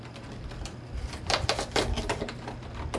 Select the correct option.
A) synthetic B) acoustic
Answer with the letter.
B